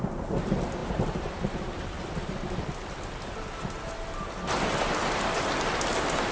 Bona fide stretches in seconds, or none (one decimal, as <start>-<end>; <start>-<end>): 0.0-6.3